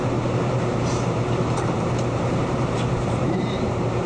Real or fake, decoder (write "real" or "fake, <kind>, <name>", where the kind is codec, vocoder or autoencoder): fake, vocoder, BigVGAN v2